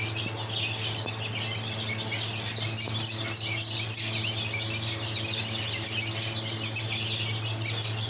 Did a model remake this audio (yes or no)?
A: yes